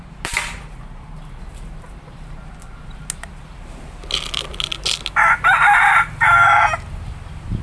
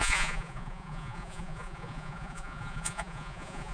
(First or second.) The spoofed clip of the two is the second